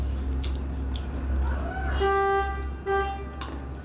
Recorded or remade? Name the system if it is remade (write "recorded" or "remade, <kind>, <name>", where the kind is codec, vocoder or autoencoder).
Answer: recorded